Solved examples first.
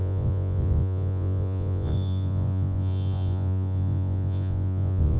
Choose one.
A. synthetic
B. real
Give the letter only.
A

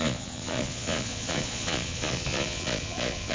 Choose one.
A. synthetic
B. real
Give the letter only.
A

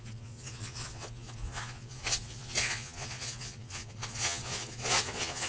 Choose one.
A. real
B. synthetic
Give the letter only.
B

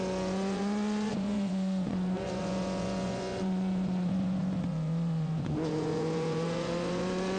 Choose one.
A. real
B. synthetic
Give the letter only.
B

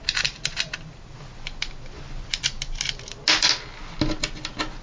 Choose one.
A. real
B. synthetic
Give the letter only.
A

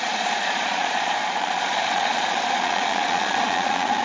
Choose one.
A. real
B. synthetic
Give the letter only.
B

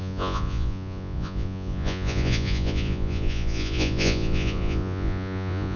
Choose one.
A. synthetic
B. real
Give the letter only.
A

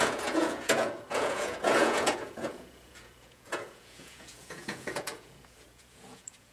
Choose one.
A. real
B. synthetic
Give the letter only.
B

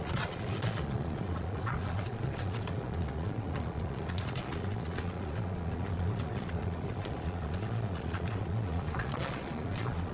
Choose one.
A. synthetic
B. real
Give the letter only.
A